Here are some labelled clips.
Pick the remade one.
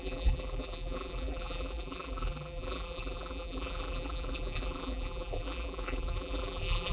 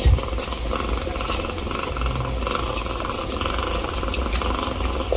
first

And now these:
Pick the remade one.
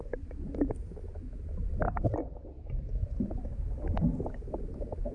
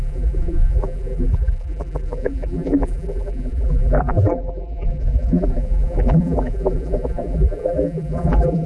second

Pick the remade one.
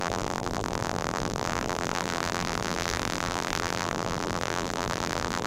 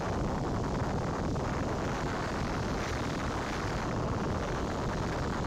first